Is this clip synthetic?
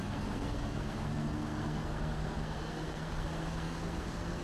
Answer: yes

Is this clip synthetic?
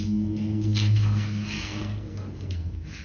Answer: yes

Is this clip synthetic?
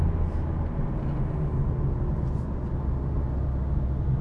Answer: no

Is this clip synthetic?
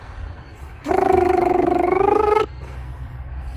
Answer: yes